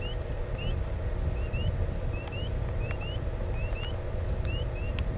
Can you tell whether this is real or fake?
real